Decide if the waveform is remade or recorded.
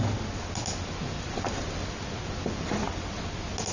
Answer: recorded